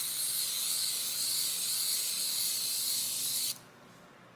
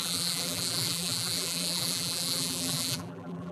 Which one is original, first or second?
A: first